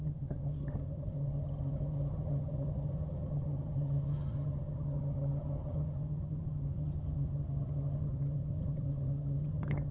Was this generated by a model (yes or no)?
yes